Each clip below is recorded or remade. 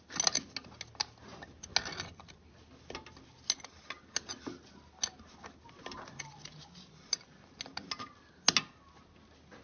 recorded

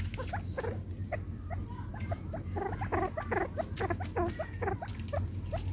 recorded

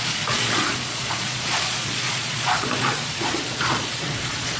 remade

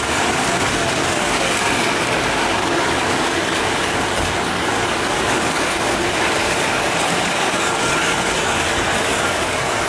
remade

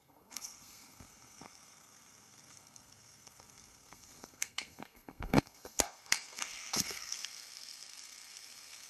remade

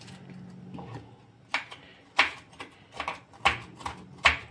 recorded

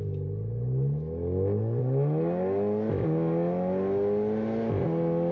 recorded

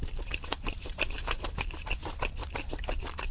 remade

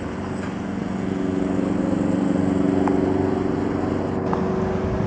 recorded